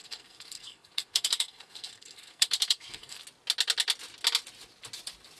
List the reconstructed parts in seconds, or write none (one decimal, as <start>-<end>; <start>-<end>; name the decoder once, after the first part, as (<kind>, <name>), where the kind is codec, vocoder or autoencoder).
0.0-3.2 (codec, SNAC)